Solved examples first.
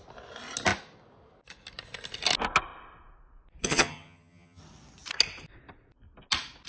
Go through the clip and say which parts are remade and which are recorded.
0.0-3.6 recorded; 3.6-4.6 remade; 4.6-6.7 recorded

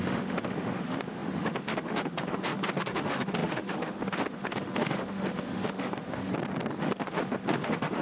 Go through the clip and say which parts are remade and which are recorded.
0.0-6.3 remade; 6.3-6.8 recorded; 6.8-8.0 remade